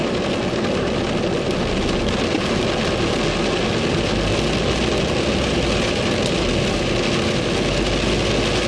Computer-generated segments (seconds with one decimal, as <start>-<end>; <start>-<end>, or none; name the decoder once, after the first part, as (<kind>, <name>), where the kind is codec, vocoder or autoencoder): none